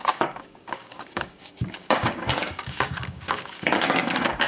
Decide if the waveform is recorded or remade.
remade